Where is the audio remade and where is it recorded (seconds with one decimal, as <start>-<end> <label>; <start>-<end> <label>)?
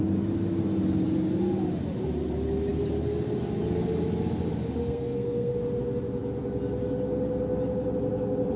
0.0-4.8 recorded; 4.8-5.5 remade; 5.5-8.6 recorded